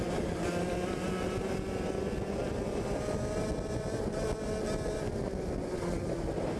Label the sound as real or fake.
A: real